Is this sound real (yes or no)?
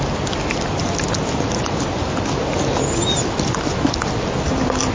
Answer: yes